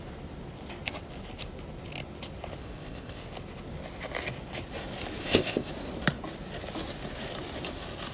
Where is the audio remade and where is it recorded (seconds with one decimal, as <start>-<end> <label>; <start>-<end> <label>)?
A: 0.0-2.6 recorded; 2.6-3.2 remade; 3.2-5.2 recorded; 5.2-5.7 remade; 5.7-8.1 recorded